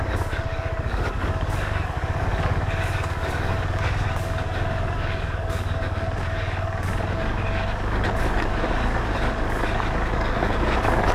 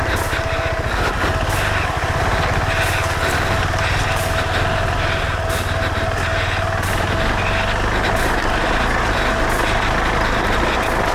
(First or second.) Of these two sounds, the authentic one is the second